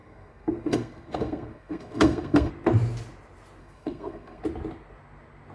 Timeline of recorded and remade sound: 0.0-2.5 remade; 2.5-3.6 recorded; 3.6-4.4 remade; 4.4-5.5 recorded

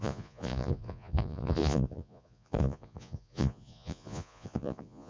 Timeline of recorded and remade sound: 0.0-5.1 remade

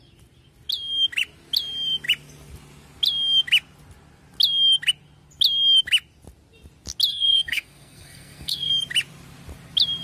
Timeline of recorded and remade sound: 0.0-7.1 recorded; 7.1-8.7 remade; 8.7-10.0 recorded